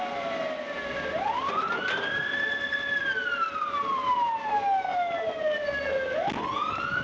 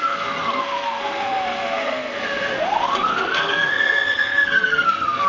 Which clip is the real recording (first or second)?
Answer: first